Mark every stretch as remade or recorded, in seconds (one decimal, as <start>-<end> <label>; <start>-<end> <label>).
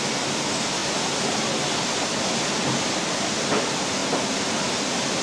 0.0-0.8 recorded; 0.8-2.0 remade; 2.0-5.2 recorded